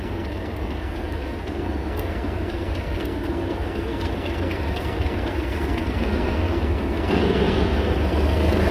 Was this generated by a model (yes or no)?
yes